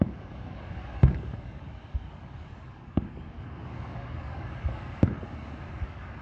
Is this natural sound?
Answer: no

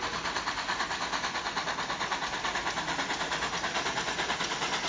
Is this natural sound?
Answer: yes